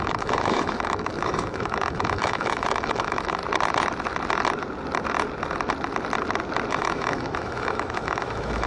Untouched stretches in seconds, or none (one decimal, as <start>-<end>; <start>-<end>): 3.4-6.7